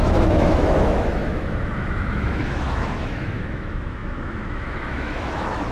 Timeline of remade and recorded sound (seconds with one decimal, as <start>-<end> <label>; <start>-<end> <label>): 0.0-5.7 remade